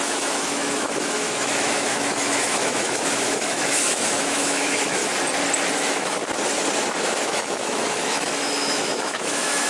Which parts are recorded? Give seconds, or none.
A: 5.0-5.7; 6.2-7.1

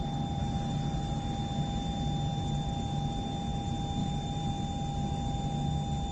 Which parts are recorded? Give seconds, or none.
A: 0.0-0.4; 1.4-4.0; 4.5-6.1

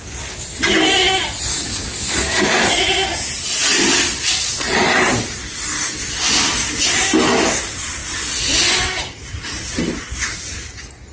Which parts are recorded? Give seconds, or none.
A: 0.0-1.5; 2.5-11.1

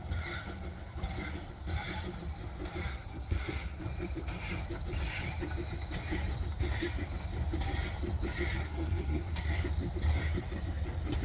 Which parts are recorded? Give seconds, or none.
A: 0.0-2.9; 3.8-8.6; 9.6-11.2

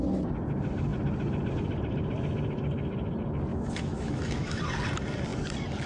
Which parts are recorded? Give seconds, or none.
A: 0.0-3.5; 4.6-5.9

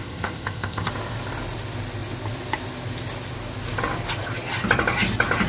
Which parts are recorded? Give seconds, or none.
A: 0.9-5.5